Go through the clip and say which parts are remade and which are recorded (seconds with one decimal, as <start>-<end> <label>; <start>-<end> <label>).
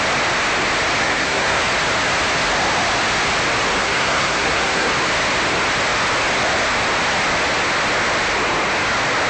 0.0-1.0 recorded; 1.0-1.6 remade; 1.6-3.8 recorded; 3.8-4.9 remade; 4.9-9.3 recorded